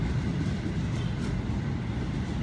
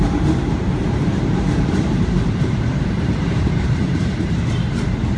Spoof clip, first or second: second